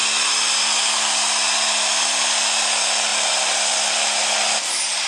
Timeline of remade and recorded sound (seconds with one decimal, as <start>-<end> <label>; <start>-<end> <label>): 0.0-5.1 recorded